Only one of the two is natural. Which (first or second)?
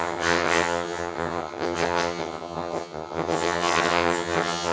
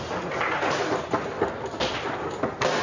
second